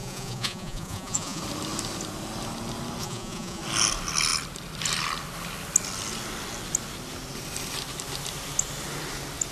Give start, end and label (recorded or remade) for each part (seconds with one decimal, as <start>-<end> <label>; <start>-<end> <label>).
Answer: 0.0-1.4 remade; 1.4-3.0 recorded; 3.0-3.6 remade; 3.6-9.5 recorded